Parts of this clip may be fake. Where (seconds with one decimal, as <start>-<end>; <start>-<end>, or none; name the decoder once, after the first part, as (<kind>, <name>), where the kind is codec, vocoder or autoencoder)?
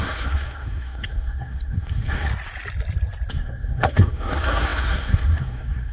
0.0-2.3 (codec, SNAC); 3.3-5.9